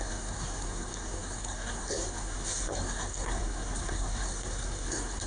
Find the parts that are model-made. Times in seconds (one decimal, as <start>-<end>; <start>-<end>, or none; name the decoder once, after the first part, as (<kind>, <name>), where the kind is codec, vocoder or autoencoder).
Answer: 0.0-5.3 (codec, SNAC)